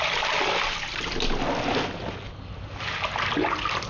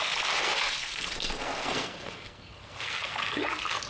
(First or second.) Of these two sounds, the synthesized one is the second